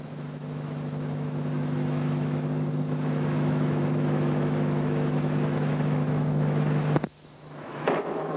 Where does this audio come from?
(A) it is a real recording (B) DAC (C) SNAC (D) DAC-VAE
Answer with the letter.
D